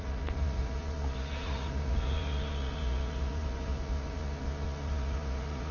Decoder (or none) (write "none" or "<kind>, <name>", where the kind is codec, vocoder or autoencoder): vocoder, Vocos